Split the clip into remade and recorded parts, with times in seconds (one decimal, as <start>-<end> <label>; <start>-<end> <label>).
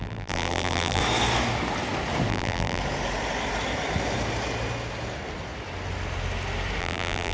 0.0-1.0 remade; 1.0-2.3 recorded; 2.3-2.8 remade; 2.8-6.8 recorded; 6.8-7.3 remade